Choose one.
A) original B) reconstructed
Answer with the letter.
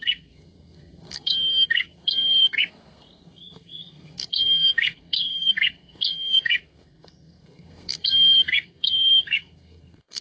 B